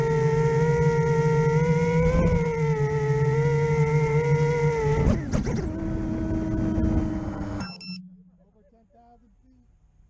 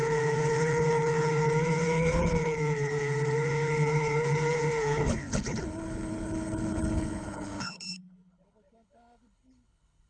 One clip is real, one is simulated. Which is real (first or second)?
first